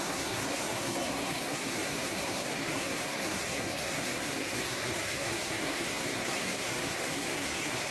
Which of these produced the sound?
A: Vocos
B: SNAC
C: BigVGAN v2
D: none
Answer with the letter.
B